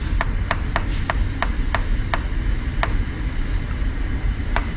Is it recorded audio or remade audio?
recorded